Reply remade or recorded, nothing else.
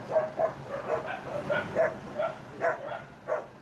recorded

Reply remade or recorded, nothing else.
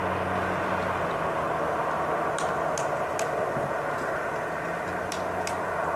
recorded